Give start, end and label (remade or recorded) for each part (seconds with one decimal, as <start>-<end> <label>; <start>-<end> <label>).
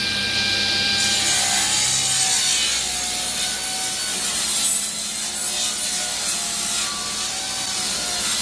0.0-8.4 recorded